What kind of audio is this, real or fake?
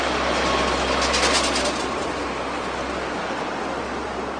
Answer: real